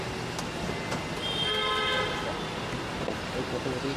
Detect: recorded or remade recorded